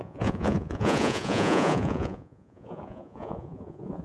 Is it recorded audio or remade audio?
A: remade